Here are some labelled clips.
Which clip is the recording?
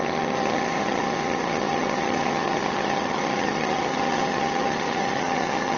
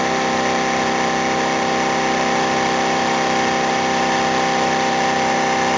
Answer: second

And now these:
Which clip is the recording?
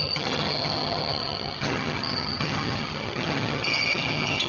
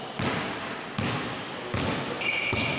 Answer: second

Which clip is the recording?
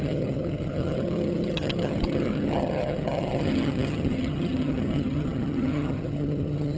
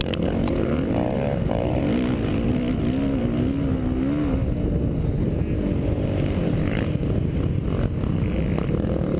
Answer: second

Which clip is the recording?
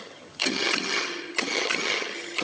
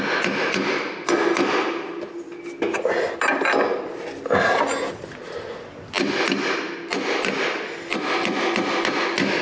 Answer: second